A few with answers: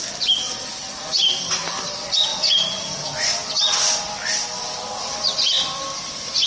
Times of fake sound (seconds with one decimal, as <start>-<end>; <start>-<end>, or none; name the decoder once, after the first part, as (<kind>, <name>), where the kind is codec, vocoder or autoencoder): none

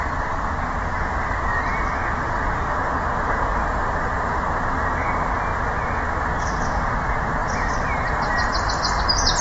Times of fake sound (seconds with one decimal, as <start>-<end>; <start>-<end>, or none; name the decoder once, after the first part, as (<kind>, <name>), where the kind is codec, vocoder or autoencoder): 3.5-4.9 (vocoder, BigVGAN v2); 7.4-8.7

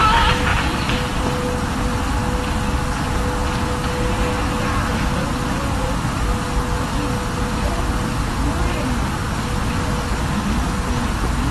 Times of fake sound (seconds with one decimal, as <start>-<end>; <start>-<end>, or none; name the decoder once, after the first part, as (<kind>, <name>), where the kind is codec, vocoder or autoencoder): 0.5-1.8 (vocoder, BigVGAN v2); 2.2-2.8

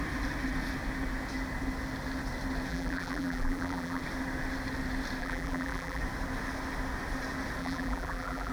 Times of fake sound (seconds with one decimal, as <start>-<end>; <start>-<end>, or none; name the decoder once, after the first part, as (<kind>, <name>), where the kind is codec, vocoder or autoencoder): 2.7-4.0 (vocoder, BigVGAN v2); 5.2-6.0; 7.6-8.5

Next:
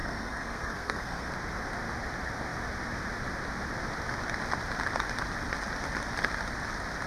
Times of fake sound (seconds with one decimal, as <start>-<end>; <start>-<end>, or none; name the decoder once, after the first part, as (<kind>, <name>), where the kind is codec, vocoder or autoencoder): 0.0-1.3 (codec, SNAC)